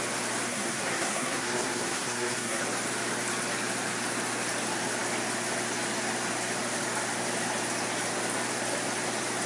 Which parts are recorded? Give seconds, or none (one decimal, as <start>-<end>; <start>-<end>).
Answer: 0.0-0.5; 2.6-9.5